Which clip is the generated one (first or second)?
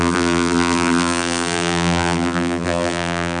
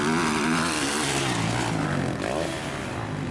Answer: first